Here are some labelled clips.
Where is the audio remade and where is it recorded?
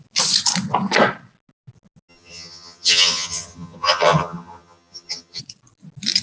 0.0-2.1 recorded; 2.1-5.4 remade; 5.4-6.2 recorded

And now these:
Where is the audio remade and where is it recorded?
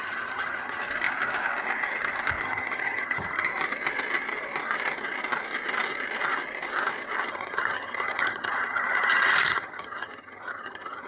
0.0-0.8 remade; 0.8-2.4 recorded; 2.4-3.5 remade; 3.5-7.3 recorded; 7.3-11.1 remade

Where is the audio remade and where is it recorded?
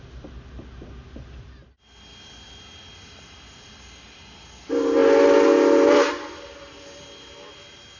0.0-8.0 recorded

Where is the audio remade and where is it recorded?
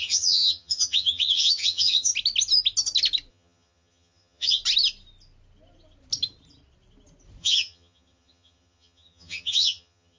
0.0-2.1 remade; 2.1-3.3 recorded; 3.3-4.6 remade; 4.6-7.4 recorded; 7.4-10.2 remade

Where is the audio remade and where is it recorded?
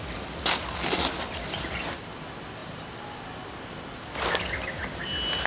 0.0-5.5 recorded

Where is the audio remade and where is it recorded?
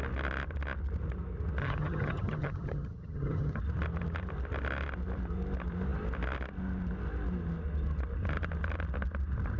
0.0-1.6 recorded; 1.6-3.6 remade; 3.6-9.6 recorded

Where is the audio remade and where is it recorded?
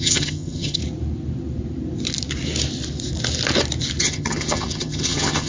0.0-0.8 remade; 0.8-4.0 recorded; 4.0-5.5 remade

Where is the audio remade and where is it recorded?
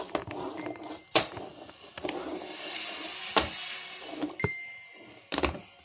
0.0-5.8 recorded